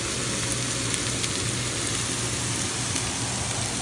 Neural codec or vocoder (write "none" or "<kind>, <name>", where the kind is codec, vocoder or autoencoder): none